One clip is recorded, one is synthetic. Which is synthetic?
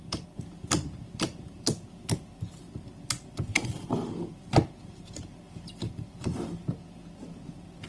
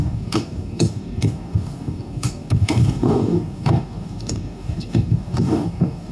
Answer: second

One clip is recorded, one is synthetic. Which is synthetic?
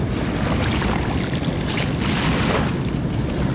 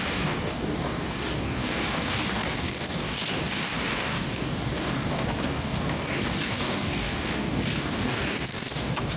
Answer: second